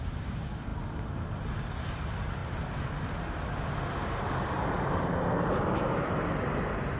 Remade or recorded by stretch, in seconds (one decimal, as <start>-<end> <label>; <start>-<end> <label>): 0.0-7.0 recorded